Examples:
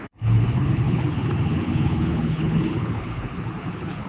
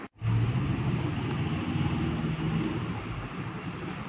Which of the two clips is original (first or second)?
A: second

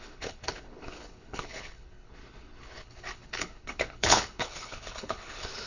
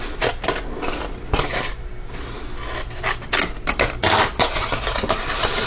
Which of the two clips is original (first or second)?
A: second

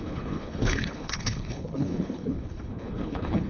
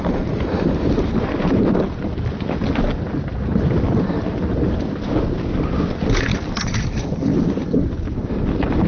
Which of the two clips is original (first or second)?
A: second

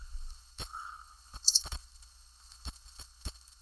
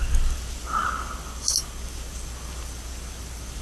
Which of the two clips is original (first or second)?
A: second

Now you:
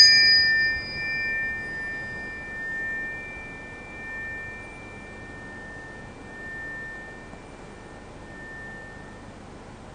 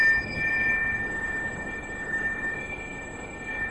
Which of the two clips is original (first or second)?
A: first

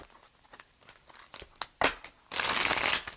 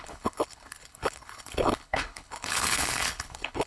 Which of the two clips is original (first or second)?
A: first